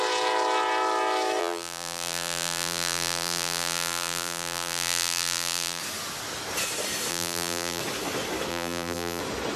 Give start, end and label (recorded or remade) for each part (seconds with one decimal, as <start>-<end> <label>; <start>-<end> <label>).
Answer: 0.0-1.4 recorded; 1.4-5.8 remade; 5.8-7.1 recorded; 7.1-7.8 remade; 7.8-8.5 recorded; 8.5-9.2 remade; 9.2-9.6 recorded